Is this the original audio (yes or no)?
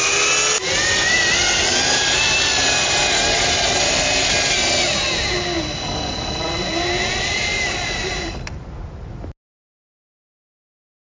yes